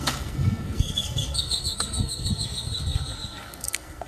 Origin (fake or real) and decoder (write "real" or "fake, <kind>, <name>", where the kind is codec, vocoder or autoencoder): fake, codec, SNAC